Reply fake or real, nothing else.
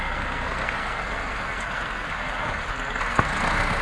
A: fake